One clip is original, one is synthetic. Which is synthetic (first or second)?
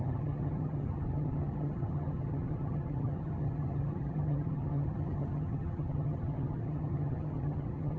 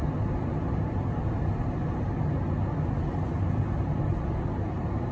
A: first